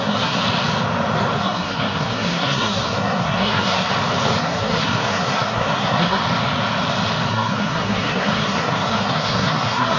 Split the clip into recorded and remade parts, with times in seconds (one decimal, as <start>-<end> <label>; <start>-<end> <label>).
0.0-0.4 remade; 0.4-1.4 recorded; 1.4-3.9 remade; 3.9-4.4 recorded; 4.4-6.2 remade; 6.2-7.3 recorded; 7.3-10.0 remade